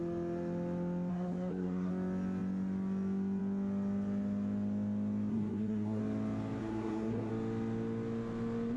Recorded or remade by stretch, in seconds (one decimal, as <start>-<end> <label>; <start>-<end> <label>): 0.0-1.1 recorded; 1.1-1.9 remade; 1.9-5.3 recorded; 5.3-6.0 remade; 6.0-6.6 recorded; 6.6-7.3 remade; 7.3-8.8 recorded